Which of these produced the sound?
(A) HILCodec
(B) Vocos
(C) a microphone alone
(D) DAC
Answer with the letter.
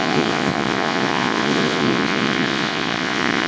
B